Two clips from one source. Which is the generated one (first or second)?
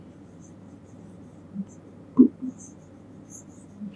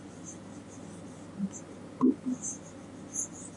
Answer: first